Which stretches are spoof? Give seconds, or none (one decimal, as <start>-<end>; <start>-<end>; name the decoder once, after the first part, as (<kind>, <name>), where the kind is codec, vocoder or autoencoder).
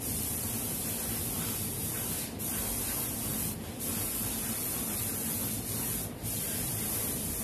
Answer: 0.0-1.8 (vocoder, BigVGAN v2); 2.5-7.4